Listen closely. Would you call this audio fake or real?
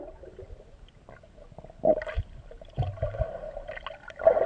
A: real